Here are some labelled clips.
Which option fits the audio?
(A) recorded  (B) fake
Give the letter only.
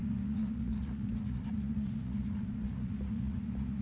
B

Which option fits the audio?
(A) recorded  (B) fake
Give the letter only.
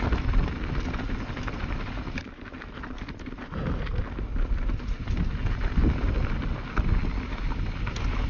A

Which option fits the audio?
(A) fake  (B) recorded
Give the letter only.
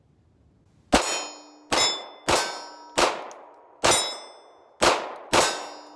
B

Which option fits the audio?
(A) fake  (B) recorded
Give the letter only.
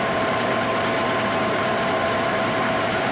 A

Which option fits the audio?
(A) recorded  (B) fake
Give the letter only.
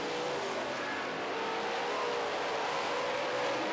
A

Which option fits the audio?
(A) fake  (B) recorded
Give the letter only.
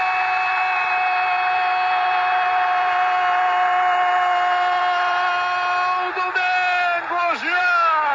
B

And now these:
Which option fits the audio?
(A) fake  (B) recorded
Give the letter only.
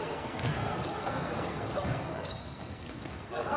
A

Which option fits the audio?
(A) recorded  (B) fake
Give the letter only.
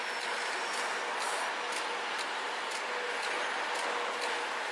A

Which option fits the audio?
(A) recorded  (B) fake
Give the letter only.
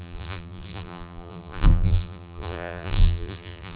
B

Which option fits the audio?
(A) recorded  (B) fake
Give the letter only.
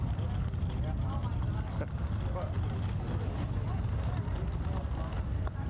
A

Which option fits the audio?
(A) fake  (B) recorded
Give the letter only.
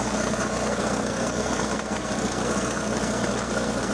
A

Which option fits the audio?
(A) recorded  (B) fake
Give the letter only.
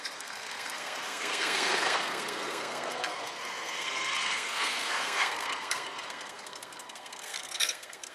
B